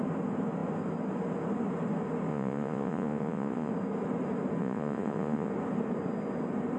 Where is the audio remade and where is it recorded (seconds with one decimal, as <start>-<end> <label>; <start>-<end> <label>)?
0.0-2.3 recorded; 2.3-3.7 remade; 3.7-4.6 recorded; 4.6-5.5 remade; 5.5-6.8 recorded